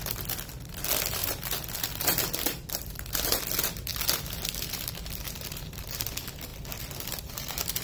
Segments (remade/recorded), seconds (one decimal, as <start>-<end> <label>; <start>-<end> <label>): 0.0-1.2 recorded; 1.2-3.4 remade; 3.4-3.9 recorded; 3.9-6.0 remade; 6.0-7.8 recorded